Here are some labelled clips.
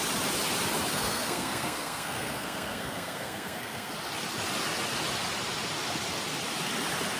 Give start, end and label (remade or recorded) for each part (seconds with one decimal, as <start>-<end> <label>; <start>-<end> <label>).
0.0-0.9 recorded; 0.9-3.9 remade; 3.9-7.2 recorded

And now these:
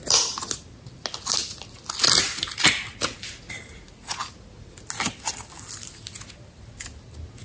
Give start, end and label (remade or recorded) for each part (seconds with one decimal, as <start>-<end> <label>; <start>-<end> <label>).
0.0-7.4 recorded

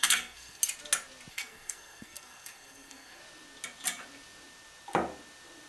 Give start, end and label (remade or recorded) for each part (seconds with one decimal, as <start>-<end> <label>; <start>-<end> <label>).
0.0-0.6 remade; 0.6-1.3 recorded; 1.3-3.2 remade; 3.2-5.7 recorded

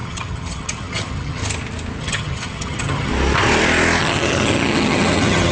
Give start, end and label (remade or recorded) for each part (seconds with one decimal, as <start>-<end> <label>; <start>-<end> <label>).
0.0-1.4 remade; 1.4-2.0 recorded; 2.0-3.1 remade; 3.1-4.0 recorded; 4.0-5.5 remade

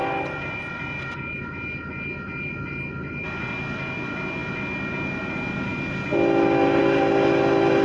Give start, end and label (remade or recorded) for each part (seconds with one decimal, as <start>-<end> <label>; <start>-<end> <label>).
0.0-1.4 remade; 1.4-7.8 recorded

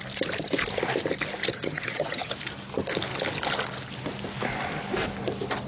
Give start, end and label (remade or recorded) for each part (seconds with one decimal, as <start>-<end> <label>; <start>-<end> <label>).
0.0-1.5 recorded; 1.5-2.3 remade; 2.3-5.7 recorded

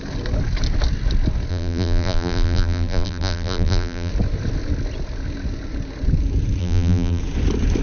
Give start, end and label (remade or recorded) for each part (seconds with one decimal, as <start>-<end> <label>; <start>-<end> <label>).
0.0-1.5 recorded; 1.5-4.1 remade; 4.1-6.6 recorded; 6.6-7.2 remade; 7.2-7.8 recorded